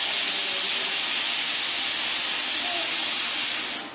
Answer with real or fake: real